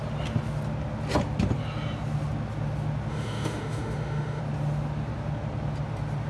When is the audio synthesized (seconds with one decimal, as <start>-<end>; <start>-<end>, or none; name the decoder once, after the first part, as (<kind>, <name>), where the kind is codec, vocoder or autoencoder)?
3.1-4.4 (autoencoder, DAC-VAE)